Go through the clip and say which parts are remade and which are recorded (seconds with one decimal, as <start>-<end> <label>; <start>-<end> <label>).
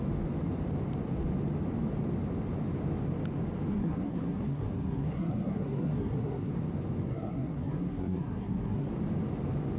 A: 0.0-3.7 recorded; 3.7-6.5 remade; 6.5-7.1 recorded; 7.1-8.9 remade; 8.9-9.8 recorded